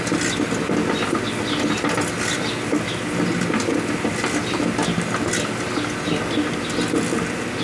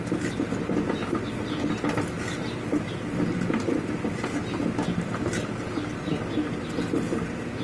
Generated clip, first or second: second